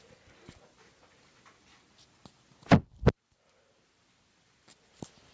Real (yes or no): yes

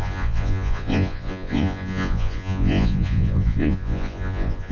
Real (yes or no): no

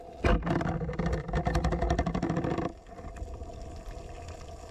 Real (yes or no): yes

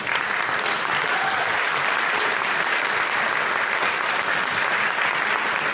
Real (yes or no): yes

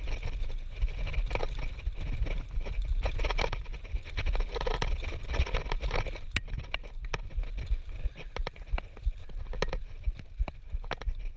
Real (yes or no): yes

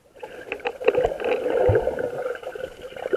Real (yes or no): yes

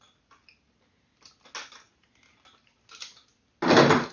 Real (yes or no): yes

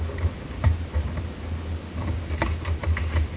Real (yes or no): yes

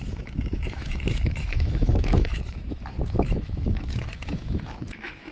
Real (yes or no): no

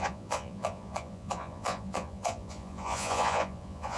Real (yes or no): no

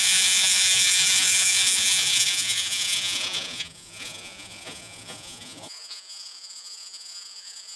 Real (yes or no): no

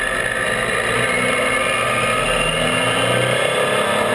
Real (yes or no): yes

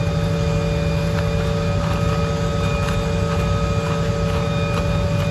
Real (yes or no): yes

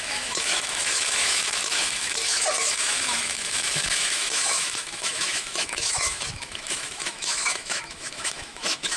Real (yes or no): no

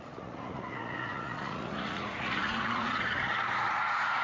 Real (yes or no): no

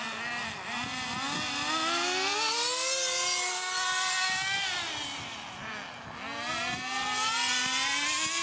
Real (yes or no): yes